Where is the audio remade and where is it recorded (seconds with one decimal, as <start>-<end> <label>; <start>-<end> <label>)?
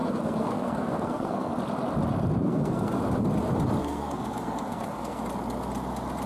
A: 0.0-1.5 remade; 1.5-2.3 recorded; 2.3-3.0 remade; 3.0-3.8 recorded; 3.8-5.2 remade; 5.2-6.3 recorded